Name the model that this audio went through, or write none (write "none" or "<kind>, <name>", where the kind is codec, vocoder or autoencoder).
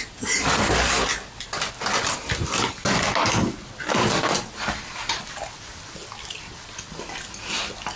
none